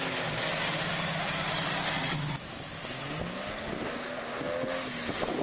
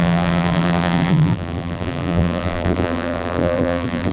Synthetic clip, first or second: second